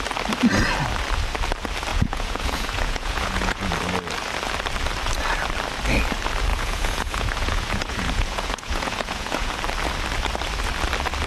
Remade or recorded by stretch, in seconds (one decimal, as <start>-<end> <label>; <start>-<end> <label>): 0.0-1.9 recorded; 1.9-3.7 remade; 3.7-6.5 recorded; 6.5-9.5 remade; 9.5-11.3 recorded

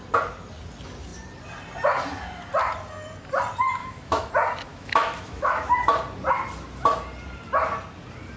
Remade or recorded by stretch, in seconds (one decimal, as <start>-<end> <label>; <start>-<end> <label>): 0.0-3.8 recorded; 3.8-4.3 remade; 4.3-4.7 recorded; 4.7-5.7 remade; 5.7-8.4 recorded

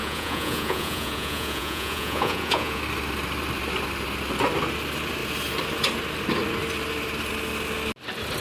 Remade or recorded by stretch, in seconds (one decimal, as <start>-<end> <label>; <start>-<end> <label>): 0.0-2.8 remade; 2.8-8.4 recorded

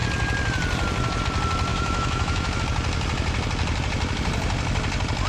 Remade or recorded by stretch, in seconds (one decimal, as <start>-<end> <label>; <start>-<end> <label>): 0.0-1.7 recorded; 1.7-2.6 remade; 2.6-5.3 recorded